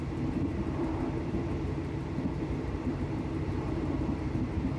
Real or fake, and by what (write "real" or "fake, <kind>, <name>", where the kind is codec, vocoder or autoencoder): fake, vocoder, BigVGAN v2